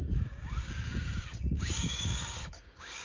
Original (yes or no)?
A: no